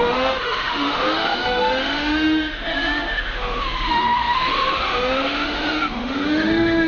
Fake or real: fake